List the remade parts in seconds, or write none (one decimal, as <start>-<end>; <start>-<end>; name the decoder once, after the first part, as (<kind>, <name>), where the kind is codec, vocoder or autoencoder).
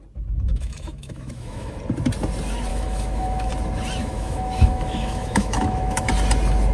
0.5-1.8 (autoencoder, DAC-VAE); 2.7-3.5; 4.0-6.1